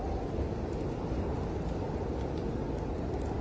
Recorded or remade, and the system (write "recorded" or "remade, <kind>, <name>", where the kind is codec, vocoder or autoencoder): recorded